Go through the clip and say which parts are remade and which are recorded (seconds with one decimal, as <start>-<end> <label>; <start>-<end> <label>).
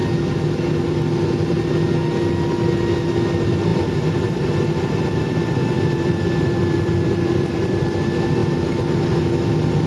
0.0-3.7 recorded; 3.7-7.8 remade; 7.8-9.9 recorded